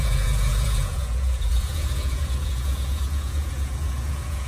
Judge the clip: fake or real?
fake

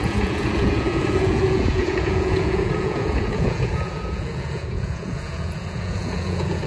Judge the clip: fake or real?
fake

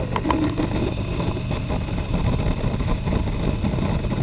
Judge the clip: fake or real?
real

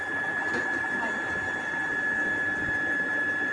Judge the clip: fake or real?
real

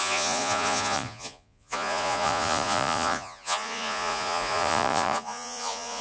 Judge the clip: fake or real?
fake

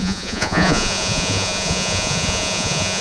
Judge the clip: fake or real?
fake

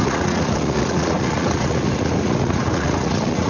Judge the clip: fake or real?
fake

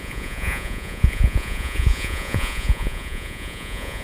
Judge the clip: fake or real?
fake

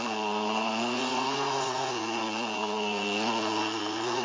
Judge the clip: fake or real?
fake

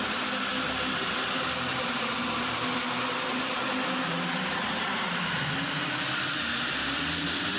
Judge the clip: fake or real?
real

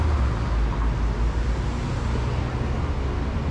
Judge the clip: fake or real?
real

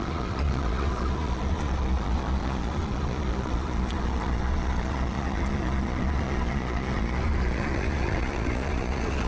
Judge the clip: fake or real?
fake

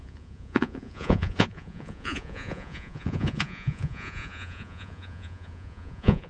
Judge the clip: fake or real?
fake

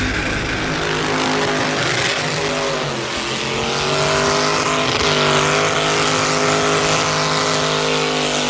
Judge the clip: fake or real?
real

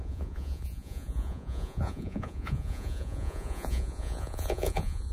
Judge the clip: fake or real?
fake